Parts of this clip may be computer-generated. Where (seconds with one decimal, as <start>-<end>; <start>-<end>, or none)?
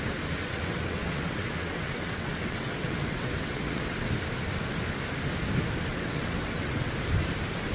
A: 0.4-4.1; 5.9-6.9